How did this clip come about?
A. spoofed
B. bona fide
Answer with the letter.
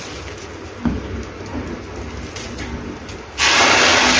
B